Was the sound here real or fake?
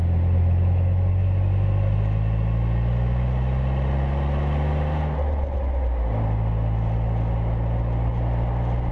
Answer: real